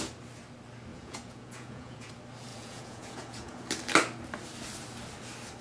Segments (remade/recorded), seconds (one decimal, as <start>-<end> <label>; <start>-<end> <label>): 0.0-0.9 recorded; 0.9-2.1 remade; 2.1-2.5 recorded; 2.5-3.6 remade; 3.6-5.6 recorded